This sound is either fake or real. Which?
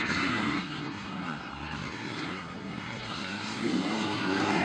fake